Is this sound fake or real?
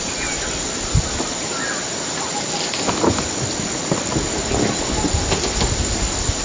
real